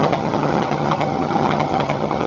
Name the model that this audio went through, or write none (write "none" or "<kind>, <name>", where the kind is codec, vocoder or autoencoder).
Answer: vocoder, HiFi-GAN